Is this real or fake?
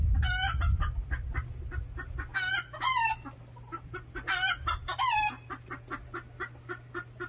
real